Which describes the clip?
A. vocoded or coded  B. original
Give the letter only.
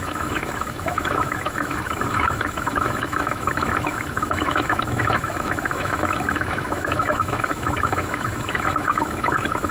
A